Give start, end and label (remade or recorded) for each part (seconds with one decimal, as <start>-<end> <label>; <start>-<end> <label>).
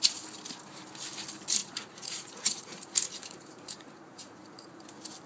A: 0.0-1.6 recorded; 1.6-4.8 remade; 4.8-5.3 recorded